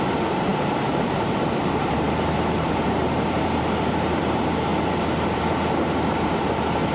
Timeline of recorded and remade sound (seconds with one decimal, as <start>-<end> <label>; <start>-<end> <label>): 0.0-4.7 remade; 4.7-5.8 recorded; 5.8-6.9 remade